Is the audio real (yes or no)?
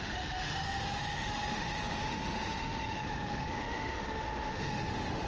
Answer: no